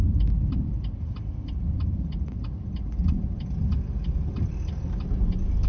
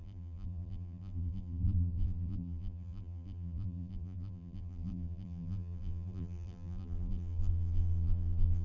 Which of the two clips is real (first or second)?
first